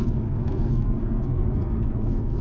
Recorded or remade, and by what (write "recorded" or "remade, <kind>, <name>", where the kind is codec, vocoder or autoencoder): remade, codec, SNAC